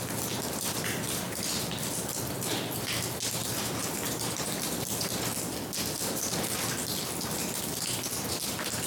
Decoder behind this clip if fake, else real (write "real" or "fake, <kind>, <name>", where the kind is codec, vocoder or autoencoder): real